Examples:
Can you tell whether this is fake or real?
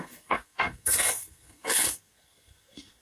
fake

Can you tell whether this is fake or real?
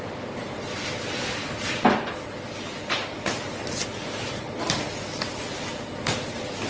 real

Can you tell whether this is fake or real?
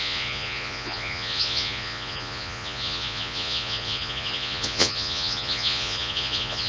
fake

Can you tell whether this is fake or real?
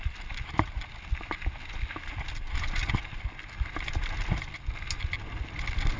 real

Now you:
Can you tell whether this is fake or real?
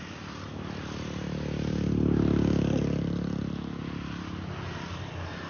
real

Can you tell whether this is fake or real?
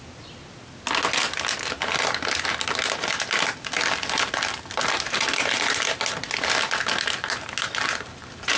real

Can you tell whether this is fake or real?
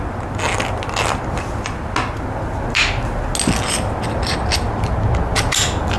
real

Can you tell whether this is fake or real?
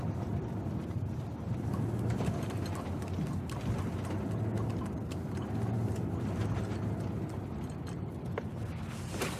real